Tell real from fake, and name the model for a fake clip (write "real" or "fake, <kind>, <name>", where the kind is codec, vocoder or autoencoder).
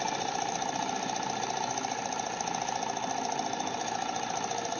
real